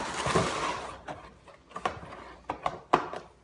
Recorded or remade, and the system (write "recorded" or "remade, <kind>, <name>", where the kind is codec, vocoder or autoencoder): recorded